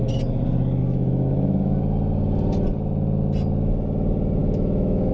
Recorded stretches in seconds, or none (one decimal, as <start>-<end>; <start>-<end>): 0.0-0.8; 1.8-4.4